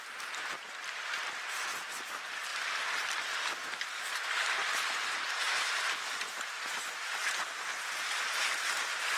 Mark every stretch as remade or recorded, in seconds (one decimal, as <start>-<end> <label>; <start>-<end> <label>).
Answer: 0.0-4.6 recorded; 4.6-8.4 remade; 8.4-9.2 recorded